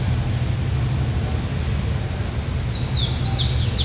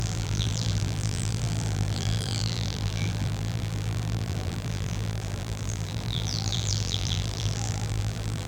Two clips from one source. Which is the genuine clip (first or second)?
first